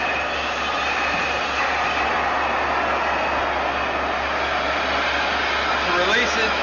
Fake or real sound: real